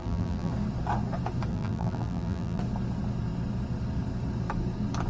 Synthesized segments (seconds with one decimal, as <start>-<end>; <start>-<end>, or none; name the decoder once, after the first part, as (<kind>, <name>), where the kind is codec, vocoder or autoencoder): 0.0-0.5 (vocoder, BigVGAN v2); 1.5-2.6